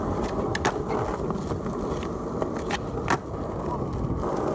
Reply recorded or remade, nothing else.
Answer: recorded